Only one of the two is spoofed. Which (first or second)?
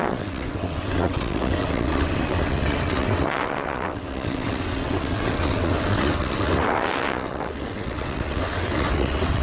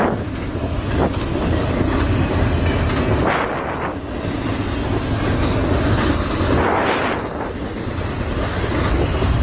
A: first